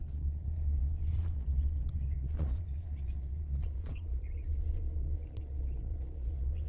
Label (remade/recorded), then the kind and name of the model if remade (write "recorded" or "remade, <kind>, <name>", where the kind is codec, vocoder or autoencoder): remade, vocoder, Vocos